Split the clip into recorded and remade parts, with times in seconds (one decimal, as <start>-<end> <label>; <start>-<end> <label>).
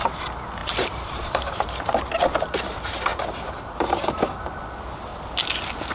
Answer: 0.0-0.6 recorded; 0.6-2.0 remade; 2.0-3.1 recorded; 3.1-4.5 remade; 4.5-5.9 recorded